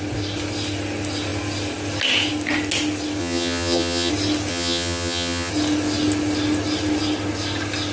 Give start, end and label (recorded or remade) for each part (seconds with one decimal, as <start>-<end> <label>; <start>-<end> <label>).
0.0-3.2 recorded; 3.2-4.1 remade; 4.1-4.5 recorded; 4.5-5.5 remade; 5.5-7.9 recorded